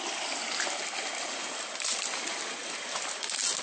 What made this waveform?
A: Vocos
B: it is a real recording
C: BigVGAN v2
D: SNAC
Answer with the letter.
B